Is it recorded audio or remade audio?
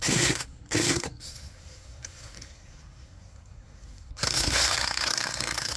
remade